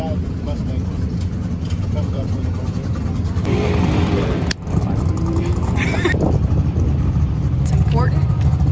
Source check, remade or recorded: remade